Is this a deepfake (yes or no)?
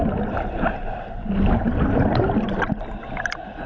no